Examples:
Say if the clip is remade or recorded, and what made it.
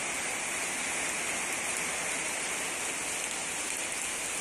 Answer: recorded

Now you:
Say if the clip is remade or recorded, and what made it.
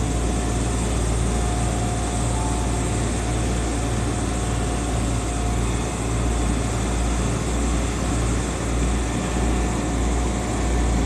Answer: recorded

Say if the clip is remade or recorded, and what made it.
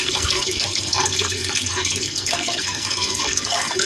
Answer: remade, codec, SNAC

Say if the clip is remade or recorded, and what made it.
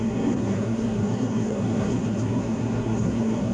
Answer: remade, codec, SNAC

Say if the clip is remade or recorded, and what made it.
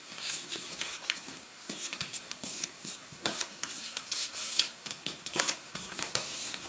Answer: remade, codec, SNAC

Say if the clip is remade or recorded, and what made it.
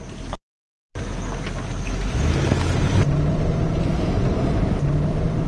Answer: recorded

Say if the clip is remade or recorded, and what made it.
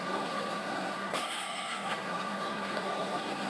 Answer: remade, codec, SNAC